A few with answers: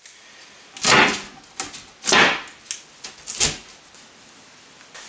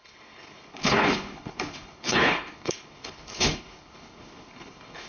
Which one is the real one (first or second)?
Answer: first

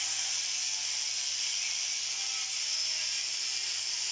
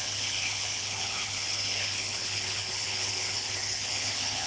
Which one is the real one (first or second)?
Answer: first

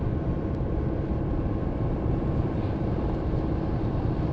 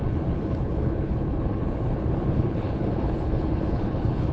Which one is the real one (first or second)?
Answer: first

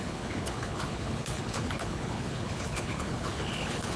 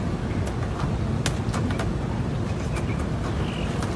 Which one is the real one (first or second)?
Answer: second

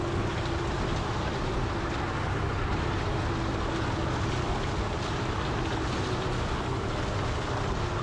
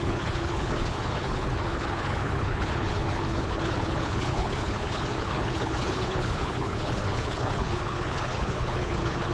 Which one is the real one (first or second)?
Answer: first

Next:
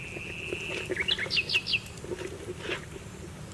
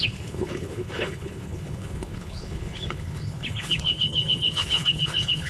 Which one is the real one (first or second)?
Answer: first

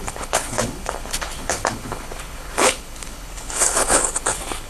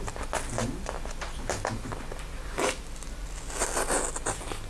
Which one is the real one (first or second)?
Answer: second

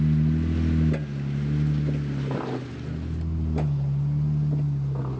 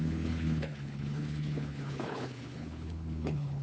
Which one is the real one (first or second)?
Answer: first